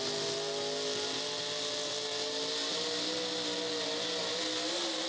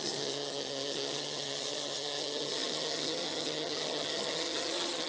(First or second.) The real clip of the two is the first